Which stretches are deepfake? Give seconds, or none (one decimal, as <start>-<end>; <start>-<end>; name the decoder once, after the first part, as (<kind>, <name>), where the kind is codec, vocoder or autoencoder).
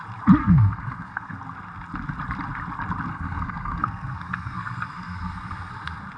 0.4-1.4 (codec, SNAC); 3.1-5.7